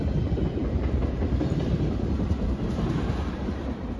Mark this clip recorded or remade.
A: remade